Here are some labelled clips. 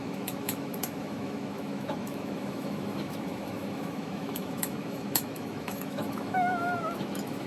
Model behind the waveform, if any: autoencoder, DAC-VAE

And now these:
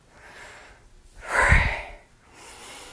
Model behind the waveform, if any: none